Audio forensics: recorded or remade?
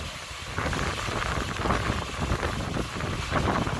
recorded